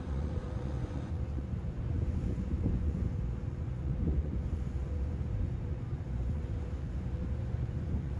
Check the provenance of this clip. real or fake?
fake